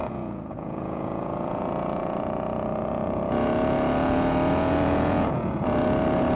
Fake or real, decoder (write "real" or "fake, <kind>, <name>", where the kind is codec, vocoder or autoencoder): fake, vocoder, Vocos